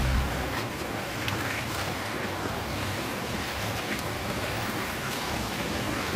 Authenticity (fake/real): fake